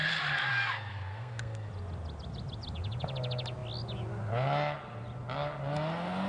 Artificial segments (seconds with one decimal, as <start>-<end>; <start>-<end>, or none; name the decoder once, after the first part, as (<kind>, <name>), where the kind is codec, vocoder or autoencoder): 0.9-1.7 (codec, SNAC)